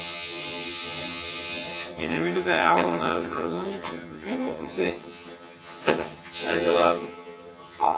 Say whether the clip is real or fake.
fake